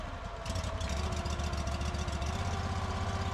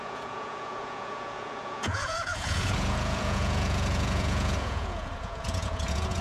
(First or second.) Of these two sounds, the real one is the first